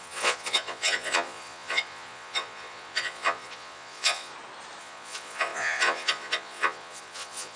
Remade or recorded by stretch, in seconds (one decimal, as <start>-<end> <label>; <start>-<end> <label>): 0.0-4.3 remade; 4.3-4.8 recorded; 4.8-7.6 remade